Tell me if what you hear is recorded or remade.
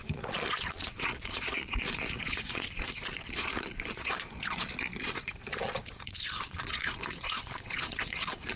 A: remade